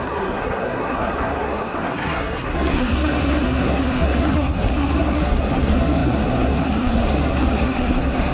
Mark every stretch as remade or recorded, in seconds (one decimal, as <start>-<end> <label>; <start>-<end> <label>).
0.0-8.3 remade

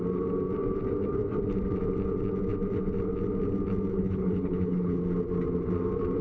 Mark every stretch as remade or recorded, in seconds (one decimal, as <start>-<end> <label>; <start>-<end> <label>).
0.0-3.9 recorded; 3.9-5.0 remade; 5.0-6.2 recorded